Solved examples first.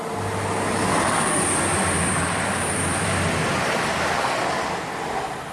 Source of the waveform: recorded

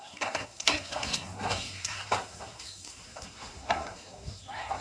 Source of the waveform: remade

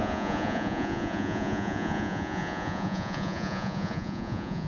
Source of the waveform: remade